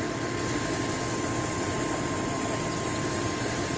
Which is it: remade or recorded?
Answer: remade